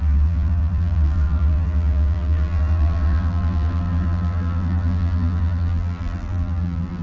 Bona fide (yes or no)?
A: no